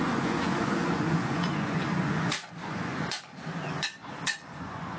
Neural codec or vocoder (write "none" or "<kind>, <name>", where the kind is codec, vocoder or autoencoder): vocoder, Vocos